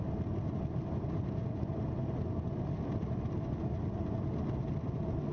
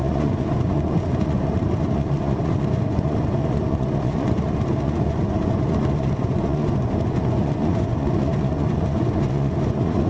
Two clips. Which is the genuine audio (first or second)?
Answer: first